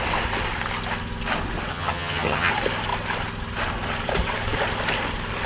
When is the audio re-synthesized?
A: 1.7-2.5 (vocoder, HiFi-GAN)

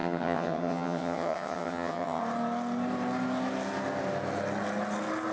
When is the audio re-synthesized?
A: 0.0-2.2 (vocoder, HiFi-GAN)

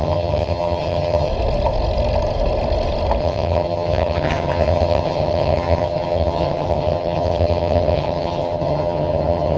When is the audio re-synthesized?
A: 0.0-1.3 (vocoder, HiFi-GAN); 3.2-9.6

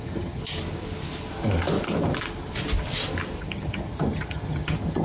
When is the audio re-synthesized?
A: 0.0-0.4 (vocoder, HiFi-GAN); 3.4-5.0

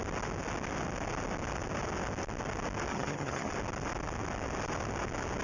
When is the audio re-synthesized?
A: 2.9-3.5 (vocoder, HiFi-GAN)

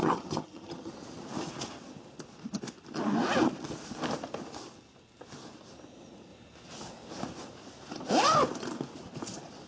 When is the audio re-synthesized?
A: 0.0-0.9 (vocoder, HiFi-GAN)